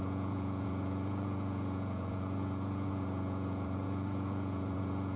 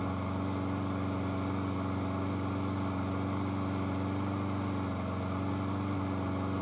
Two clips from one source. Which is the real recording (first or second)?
second